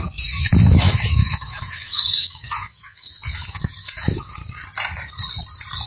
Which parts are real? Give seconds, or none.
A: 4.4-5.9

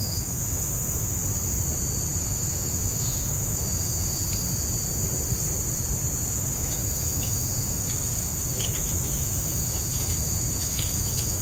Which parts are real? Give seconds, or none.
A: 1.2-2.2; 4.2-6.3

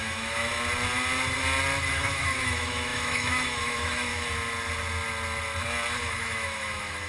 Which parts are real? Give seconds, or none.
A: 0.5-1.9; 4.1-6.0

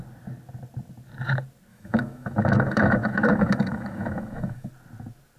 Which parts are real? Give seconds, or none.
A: 0.0-1.7; 4.7-5.4